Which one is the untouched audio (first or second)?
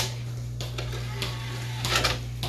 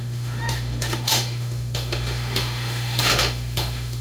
first